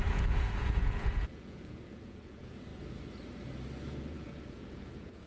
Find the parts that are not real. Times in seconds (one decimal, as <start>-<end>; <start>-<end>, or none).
0.0-2.7; 4.0-5.3